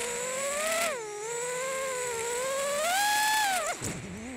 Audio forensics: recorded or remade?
recorded